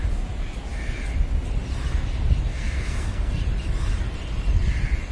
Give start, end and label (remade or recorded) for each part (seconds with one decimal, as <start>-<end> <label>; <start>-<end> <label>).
0.0-2.5 recorded; 2.5-3.4 remade; 3.4-5.1 recorded